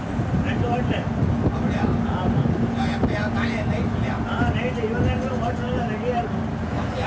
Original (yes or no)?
yes